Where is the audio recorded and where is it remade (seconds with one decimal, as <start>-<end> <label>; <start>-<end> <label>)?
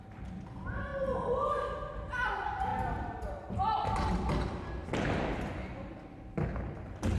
0.0-0.9 recorded; 0.9-1.5 remade; 1.5-7.2 recorded